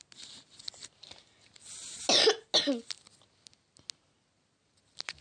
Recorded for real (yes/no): yes